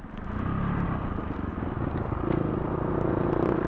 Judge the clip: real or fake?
real